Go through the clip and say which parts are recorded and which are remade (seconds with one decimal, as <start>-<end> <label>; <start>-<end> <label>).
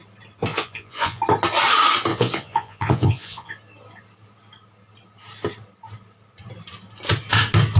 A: 0.0-0.5 recorded; 0.5-1.2 remade; 1.2-2.1 recorded; 2.1-3.5 remade; 3.5-7.8 recorded